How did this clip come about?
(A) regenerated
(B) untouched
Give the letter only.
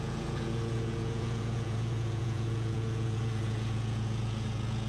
A